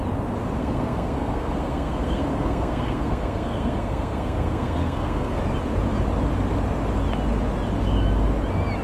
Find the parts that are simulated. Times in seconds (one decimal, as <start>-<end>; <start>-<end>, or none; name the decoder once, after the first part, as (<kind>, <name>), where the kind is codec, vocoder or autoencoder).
0.6-5.4 (codec, SNAC)